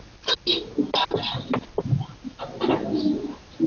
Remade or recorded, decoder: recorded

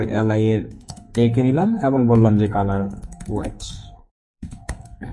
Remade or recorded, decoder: remade, codec, SNAC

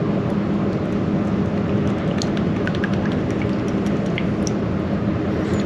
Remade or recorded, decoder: recorded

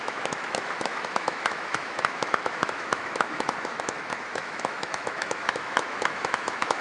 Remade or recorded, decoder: remade, autoencoder, DAC-VAE